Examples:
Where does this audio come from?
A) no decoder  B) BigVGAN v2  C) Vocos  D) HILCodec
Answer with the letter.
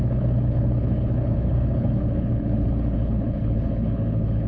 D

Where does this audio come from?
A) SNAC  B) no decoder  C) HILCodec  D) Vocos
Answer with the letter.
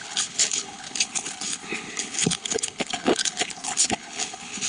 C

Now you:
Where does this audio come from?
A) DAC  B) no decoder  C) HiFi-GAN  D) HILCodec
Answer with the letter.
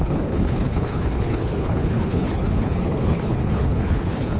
D